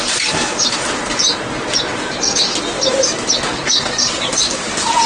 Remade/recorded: remade